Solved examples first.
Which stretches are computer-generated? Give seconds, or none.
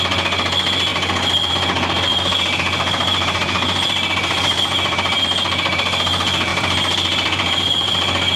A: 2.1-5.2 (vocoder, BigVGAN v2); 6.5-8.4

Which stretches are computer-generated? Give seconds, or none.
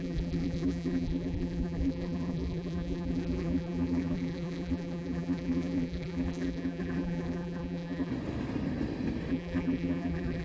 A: 0.0-8.1 (vocoder, BigVGAN v2); 9.3-10.4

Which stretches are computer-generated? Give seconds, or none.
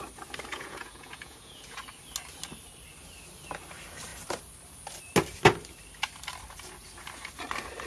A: 0.5-1.8 (vocoder, Vocos)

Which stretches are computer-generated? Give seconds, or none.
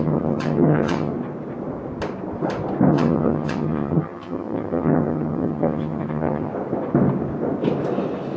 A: 0.0-1.1 (vocoder, HiFi-GAN); 2.9-6.5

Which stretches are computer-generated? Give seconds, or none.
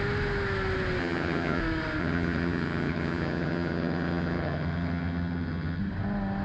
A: 1.0-1.6 (vocoder, HiFi-GAN); 2.0-5.8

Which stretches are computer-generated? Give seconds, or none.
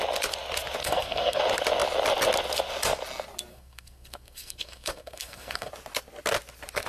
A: 0.8-1.4 (codec, SNAC); 3.5-5.7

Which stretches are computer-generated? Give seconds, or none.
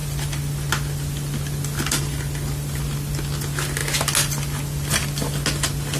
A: none